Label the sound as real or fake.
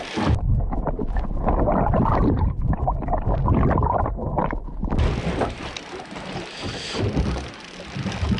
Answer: real